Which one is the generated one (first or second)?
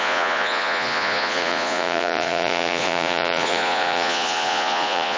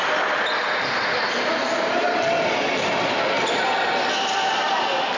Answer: first